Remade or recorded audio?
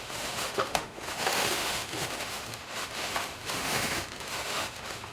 remade